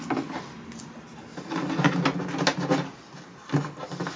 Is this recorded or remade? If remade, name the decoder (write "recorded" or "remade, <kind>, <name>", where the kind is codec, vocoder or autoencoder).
recorded